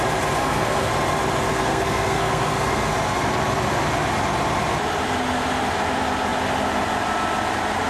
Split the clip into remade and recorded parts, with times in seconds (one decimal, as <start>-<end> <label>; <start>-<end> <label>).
0.0-0.4 recorded; 0.4-0.9 remade; 0.9-1.4 recorded; 1.4-2.9 remade; 2.9-7.9 recorded